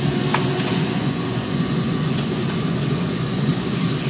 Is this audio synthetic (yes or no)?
yes